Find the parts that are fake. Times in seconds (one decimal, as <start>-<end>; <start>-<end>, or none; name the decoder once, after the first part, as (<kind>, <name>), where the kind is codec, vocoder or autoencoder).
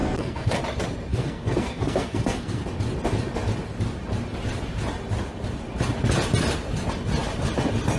0.0-0.6 (codec, SNAC); 1.1-2.6